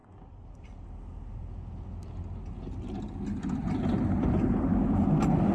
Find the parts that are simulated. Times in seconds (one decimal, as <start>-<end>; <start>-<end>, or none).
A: none

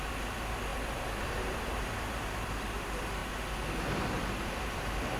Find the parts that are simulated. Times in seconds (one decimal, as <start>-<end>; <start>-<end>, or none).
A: 0.0-3.2; 4.4-5.2

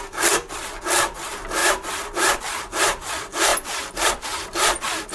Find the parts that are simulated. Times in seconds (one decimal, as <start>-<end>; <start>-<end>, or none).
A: 1.6-2.4; 3.5-4.1

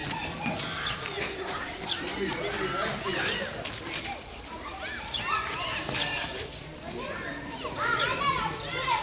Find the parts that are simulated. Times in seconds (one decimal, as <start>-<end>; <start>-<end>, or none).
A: 0.0-2.1; 3.4-9.0

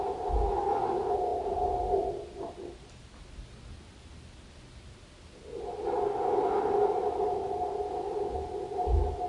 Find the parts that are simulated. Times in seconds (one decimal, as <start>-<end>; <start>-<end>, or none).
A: none